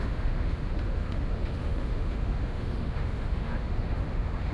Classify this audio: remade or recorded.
remade